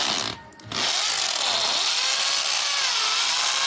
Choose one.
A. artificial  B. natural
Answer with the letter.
B